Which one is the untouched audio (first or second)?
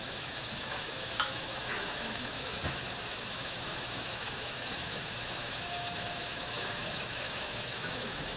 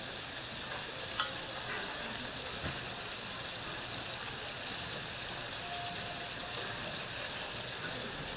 second